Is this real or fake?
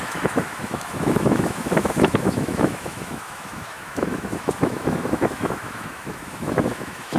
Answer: fake